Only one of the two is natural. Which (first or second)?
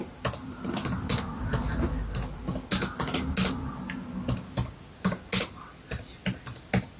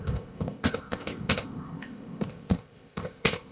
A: first